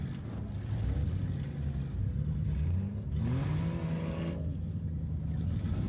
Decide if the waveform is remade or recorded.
recorded